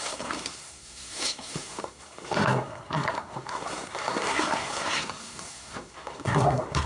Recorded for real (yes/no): no